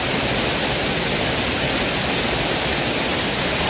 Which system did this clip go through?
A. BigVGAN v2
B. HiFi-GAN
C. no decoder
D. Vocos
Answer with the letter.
C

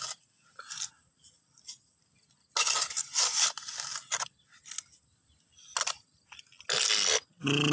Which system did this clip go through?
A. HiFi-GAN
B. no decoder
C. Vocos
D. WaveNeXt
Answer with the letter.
B